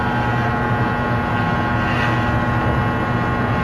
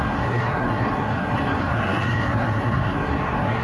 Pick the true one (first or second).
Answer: first